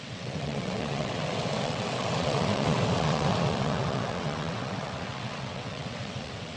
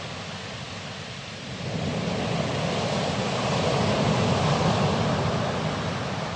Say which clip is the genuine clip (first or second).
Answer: second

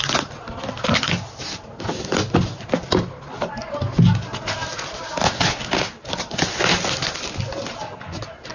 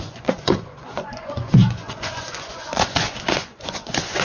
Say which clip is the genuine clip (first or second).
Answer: first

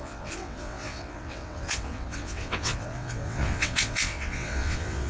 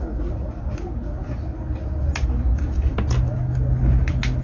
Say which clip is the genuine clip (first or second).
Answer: second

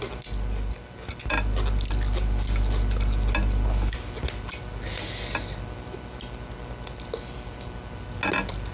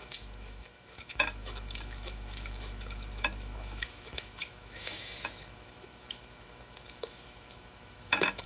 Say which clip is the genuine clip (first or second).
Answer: first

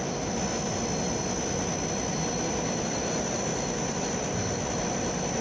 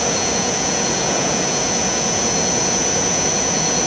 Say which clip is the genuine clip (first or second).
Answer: first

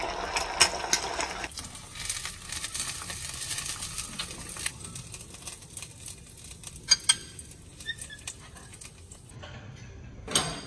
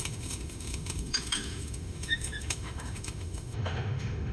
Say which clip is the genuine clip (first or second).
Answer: first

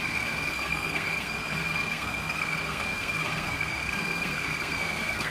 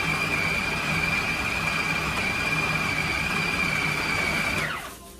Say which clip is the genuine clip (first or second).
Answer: second